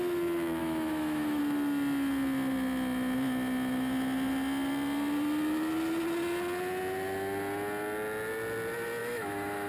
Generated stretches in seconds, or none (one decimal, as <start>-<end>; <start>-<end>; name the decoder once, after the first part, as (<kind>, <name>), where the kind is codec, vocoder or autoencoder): 0.6-1.4 (autoencoder, DAC-VAE); 9.0-9.7